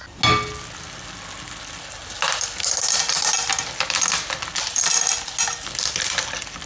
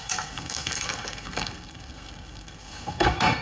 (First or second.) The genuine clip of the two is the first